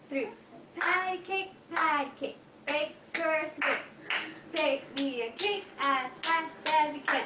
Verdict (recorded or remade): recorded